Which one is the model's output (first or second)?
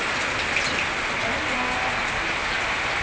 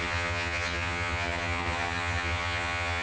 second